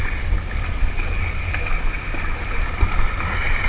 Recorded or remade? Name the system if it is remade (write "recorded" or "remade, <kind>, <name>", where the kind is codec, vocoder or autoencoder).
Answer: recorded